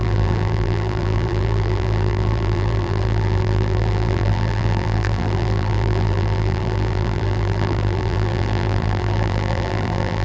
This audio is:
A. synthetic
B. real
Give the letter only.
A